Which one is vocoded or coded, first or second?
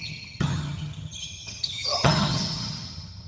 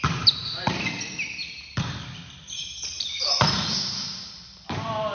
first